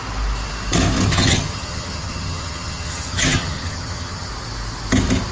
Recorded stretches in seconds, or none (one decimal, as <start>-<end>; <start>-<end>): 0.0-1.1; 4.3-5.3